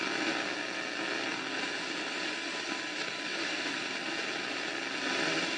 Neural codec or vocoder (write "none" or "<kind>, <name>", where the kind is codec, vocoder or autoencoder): none